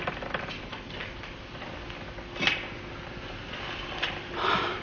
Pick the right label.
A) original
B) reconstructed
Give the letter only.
A